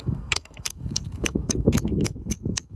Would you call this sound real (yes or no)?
no